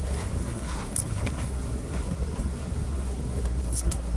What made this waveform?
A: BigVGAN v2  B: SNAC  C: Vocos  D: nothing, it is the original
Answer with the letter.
B